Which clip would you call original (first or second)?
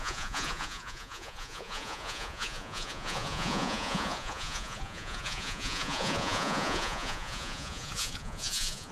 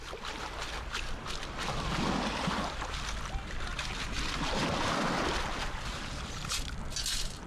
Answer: second